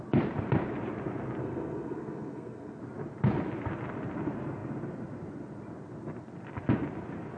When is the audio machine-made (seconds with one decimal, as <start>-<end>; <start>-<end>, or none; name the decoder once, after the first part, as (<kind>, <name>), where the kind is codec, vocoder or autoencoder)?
1.4-2.8 (codec, SNAC)